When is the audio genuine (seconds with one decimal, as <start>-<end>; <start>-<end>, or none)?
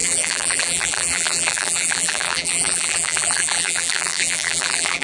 none